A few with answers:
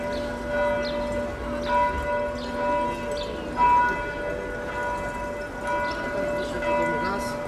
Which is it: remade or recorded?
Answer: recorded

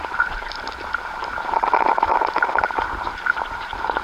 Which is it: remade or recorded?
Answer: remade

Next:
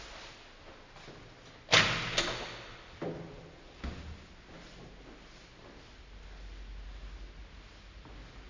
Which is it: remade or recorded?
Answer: recorded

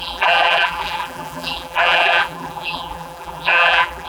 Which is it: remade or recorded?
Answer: remade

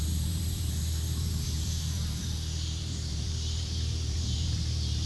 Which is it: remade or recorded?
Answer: remade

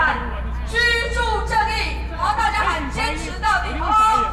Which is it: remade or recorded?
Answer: recorded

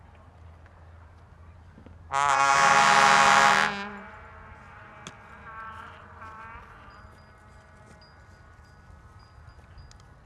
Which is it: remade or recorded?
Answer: recorded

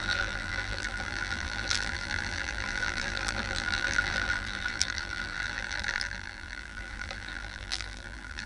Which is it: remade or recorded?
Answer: remade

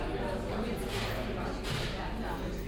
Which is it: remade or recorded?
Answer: recorded